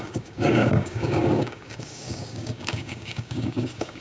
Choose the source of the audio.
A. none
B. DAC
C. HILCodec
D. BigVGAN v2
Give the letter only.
B